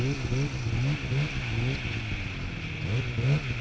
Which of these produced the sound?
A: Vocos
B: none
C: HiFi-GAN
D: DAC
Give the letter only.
B